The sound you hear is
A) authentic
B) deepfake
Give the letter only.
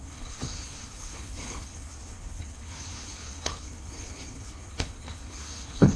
B